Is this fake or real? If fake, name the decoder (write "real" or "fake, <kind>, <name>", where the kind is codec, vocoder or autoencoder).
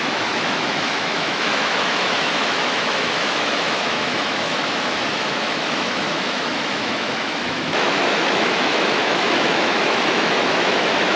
fake, autoencoder, DAC-VAE